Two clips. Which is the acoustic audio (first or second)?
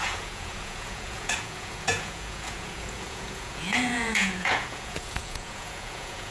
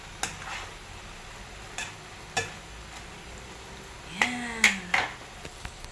second